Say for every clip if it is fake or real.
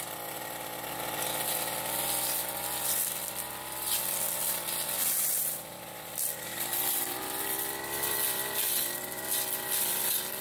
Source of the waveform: real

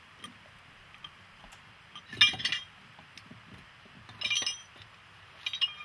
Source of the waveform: real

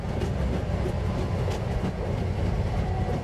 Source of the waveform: real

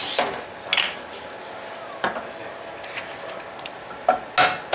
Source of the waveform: real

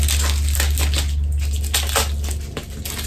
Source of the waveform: real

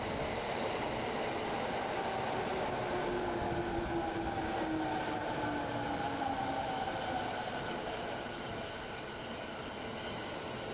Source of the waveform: real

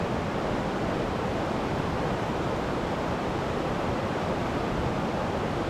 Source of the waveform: fake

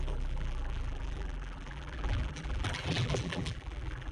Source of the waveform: fake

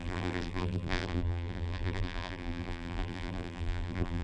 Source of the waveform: fake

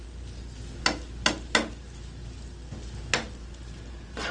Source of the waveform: real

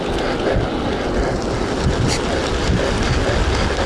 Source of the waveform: real